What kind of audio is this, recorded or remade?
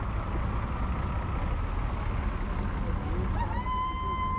recorded